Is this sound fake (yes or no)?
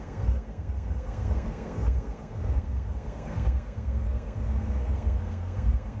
yes